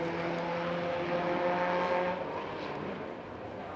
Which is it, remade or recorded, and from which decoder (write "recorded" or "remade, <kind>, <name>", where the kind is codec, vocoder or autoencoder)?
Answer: recorded